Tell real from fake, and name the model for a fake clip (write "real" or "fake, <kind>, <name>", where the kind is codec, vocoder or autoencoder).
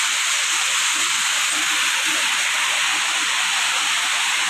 real